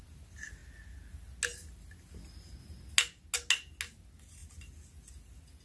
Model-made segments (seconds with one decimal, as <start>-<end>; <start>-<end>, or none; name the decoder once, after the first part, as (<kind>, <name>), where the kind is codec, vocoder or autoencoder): none